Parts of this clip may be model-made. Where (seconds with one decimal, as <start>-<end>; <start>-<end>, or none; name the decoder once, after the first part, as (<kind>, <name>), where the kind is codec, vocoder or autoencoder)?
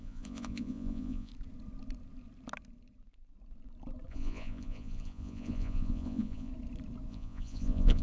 0.0-1.3 (vocoder, Vocos); 4.1-6.5; 7.1-8.0